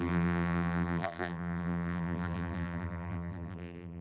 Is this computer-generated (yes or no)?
yes